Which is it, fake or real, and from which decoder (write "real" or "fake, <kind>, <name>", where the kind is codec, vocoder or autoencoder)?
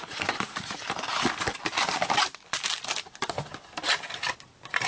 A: real